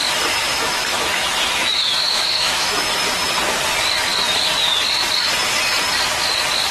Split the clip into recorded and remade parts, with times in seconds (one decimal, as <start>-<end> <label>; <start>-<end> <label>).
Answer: 0.0-0.4 recorded; 0.4-3.0 remade; 3.0-6.7 recorded